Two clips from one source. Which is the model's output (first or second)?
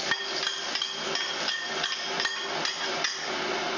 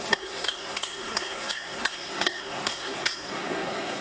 second